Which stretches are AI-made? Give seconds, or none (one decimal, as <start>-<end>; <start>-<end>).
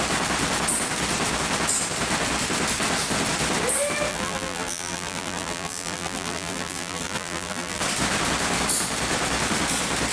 4.1-7.8